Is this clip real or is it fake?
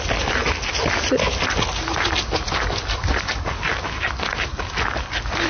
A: real